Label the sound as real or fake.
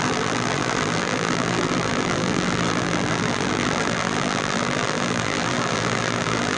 fake